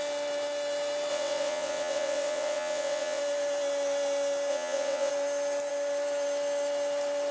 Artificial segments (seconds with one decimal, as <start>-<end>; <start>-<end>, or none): 1.1-3.2; 4.5-5.1